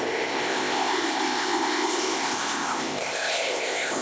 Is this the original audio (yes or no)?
no